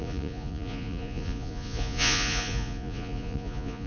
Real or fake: fake